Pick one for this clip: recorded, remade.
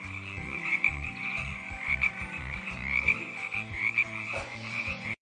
remade